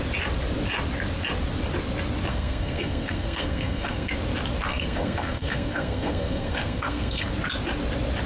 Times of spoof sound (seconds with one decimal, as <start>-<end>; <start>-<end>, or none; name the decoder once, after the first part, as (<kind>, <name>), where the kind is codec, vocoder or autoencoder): 2.3-4.1 (codec, SNAC); 4.7-7.3